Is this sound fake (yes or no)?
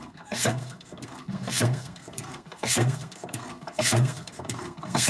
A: yes